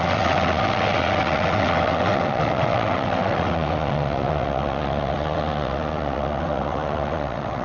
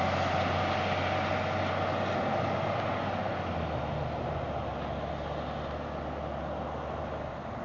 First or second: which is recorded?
second